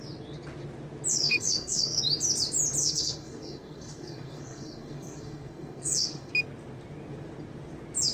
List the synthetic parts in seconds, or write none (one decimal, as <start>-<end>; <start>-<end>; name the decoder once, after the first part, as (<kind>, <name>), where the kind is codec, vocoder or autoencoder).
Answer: 1.1-2.0 (codec, SNAC); 2.8-6.3

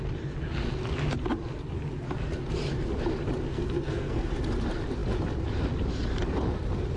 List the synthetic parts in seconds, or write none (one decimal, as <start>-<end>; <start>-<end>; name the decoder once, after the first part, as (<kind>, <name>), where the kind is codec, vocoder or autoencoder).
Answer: 3.5-4.3 (codec, SNAC)

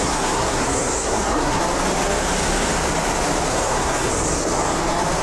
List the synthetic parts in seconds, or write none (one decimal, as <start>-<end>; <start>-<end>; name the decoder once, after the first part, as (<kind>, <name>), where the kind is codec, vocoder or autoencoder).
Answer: 0.0-1.6 (codec, SNAC); 3.5-4.1